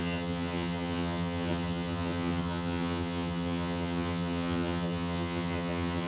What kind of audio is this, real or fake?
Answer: fake